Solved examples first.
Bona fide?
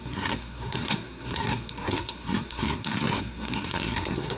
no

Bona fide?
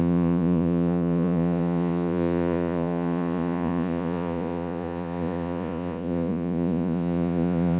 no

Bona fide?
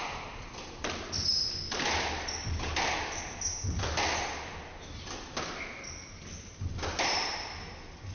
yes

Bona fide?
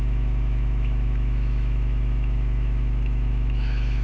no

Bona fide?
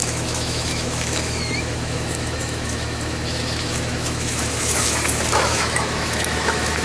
no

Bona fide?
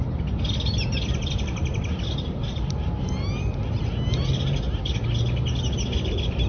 yes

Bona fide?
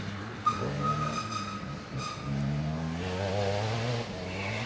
yes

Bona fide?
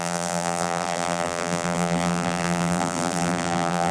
no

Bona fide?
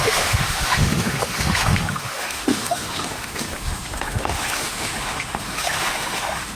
no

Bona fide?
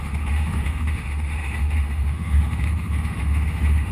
no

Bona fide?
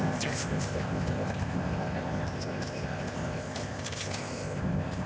no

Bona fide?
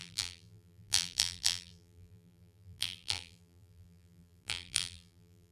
no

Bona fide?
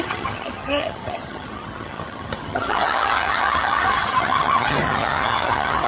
no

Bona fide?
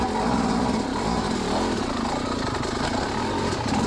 yes